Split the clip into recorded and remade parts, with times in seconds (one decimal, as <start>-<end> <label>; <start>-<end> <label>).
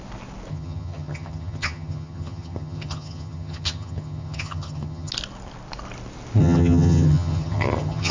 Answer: 0.0-0.5 recorded; 0.5-5.1 remade; 5.1-6.4 recorded; 6.4-8.1 remade